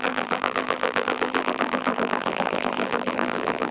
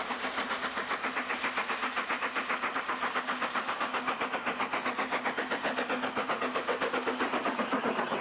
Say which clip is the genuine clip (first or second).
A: second